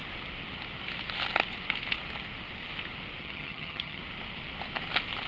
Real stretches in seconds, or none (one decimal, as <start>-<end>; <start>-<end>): 0.0-3.2; 4.0-5.3